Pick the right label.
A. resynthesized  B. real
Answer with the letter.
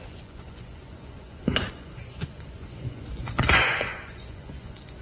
A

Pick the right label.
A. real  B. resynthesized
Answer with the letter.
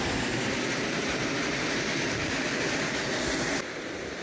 A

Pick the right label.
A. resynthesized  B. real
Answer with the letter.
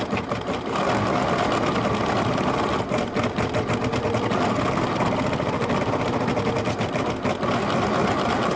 B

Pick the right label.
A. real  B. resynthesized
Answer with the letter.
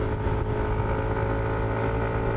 A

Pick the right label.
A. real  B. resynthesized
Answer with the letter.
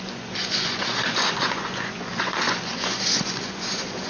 B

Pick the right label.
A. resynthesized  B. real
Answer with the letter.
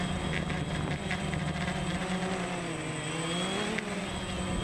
B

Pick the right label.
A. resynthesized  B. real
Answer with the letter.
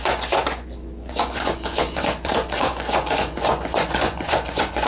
A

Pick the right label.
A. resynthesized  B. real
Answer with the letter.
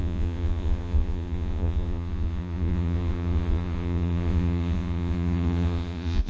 A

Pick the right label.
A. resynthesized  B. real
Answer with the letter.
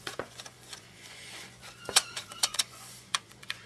A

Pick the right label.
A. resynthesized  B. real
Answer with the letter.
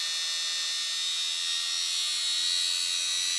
B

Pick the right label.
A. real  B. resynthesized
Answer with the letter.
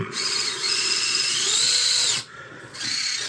B